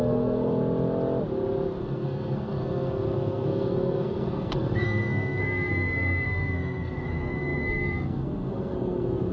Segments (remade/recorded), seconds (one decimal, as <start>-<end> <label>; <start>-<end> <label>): 0.0-0.6 remade; 0.6-1.8 recorded; 1.8-9.3 remade